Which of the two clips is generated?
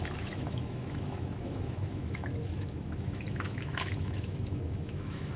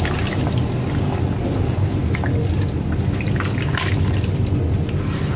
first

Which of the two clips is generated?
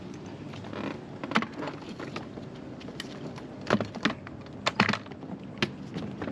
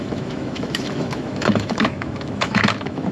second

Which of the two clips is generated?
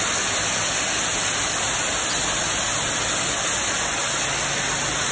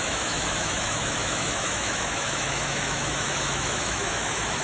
second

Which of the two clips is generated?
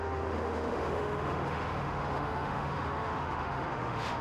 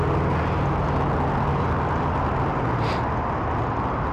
first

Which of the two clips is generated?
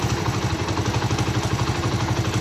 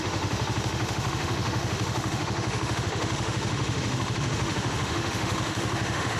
second